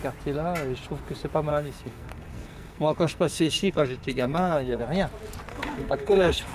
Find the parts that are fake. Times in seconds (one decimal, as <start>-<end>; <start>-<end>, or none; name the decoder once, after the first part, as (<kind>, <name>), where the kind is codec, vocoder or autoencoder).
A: 1.5-4.8 (codec, SNAC); 5.5-6.5